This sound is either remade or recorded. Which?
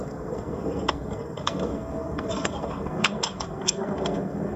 remade